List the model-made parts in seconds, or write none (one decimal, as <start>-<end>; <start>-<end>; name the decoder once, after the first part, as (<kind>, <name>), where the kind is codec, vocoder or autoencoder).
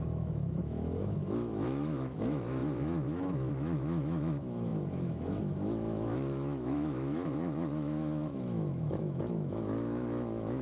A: 0.0-10.6 (autoencoder, DAC-VAE)